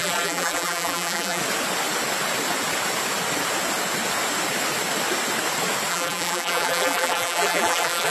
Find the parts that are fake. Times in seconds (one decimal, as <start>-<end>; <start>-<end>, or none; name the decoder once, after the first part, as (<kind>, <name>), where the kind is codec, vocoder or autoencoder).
0.0-1.4 (vocoder, BigVGAN v2); 5.9-8.1